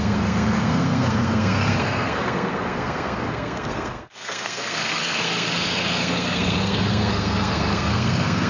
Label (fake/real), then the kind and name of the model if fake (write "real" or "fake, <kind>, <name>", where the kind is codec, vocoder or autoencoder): fake, codec, SNAC